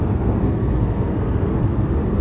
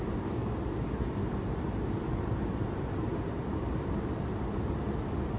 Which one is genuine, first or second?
second